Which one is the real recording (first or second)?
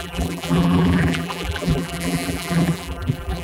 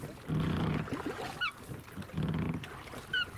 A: second